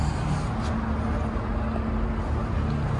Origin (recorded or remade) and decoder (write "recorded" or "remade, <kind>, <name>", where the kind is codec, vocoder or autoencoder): recorded